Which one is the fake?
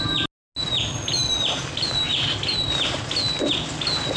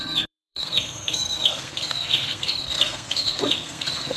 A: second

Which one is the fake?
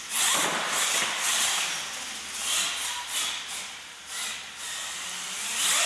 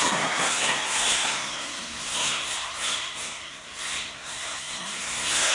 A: second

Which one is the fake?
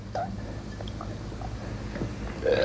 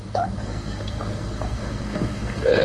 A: second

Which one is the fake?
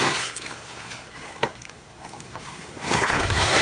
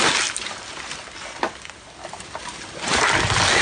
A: first